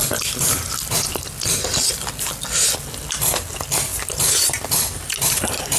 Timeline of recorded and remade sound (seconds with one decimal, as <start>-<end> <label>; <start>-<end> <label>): 0.0-1.9 remade; 1.9-5.8 recorded